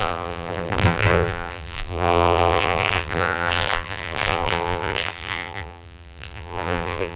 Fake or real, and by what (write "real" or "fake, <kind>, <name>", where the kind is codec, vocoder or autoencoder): fake, vocoder, BigVGAN v2